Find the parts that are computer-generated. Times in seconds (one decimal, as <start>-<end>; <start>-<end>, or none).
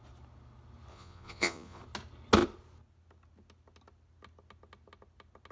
0.9-1.8